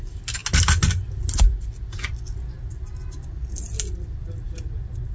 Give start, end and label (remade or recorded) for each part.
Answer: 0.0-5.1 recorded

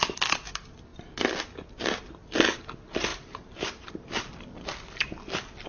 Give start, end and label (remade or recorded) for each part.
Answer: 0.0-3.1 recorded; 3.1-3.9 remade; 3.9-5.7 recorded

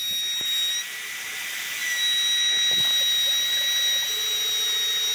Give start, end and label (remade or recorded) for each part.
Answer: 0.0-5.1 recorded

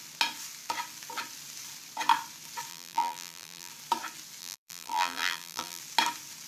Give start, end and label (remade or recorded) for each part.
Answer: 0.0-2.7 recorded; 2.7-3.7 remade; 3.7-4.4 recorded; 4.4-5.8 remade; 5.8-6.5 recorded